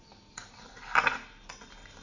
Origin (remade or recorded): recorded